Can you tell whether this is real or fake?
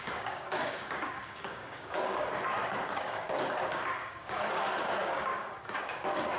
fake